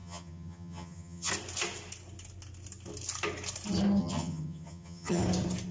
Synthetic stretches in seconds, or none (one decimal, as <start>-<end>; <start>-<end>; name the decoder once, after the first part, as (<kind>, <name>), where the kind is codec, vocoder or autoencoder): 0.0-1.3 (vocoder, HiFi-GAN); 4.0-5.2